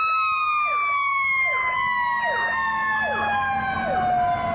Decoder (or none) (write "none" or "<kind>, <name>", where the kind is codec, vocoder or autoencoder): none